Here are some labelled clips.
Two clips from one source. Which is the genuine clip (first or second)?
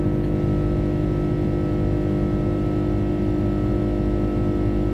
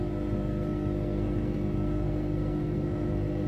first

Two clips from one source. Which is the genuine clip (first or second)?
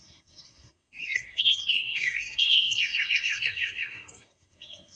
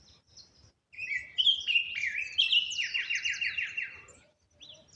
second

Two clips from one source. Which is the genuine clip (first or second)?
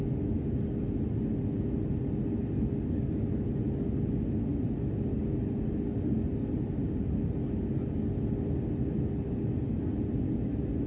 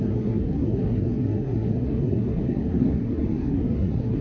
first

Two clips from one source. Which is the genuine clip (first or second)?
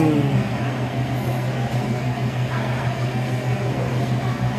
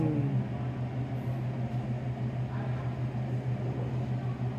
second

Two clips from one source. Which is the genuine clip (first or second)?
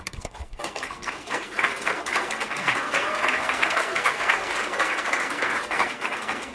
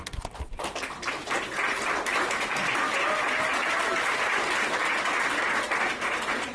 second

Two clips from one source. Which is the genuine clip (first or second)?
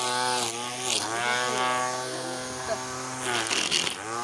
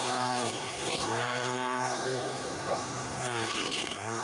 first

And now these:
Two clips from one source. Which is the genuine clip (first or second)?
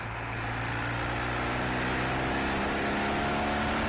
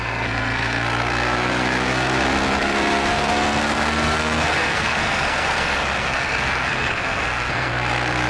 first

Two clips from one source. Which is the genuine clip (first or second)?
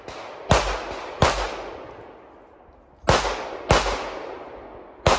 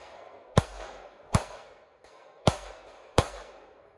first